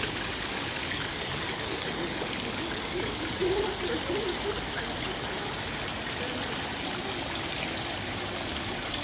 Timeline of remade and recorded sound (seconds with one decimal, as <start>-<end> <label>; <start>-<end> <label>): 0.0-3.4 remade; 3.4-8.5 recorded; 8.5-9.0 remade